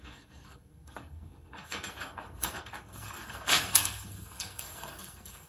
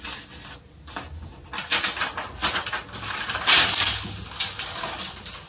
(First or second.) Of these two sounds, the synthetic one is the first